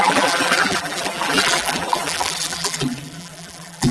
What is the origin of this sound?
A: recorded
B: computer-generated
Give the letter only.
B